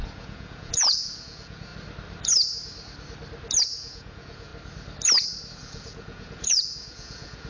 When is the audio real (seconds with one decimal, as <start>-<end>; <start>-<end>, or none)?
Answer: 1.7-3.6; 4.5-5.5